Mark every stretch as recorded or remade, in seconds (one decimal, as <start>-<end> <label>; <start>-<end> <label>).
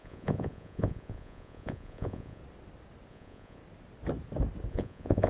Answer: 0.0-2.4 remade; 2.4-3.1 recorded; 3.1-3.6 remade; 3.6-4.7 recorded; 4.7-5.3 remade